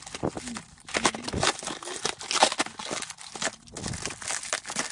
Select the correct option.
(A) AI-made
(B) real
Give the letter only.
B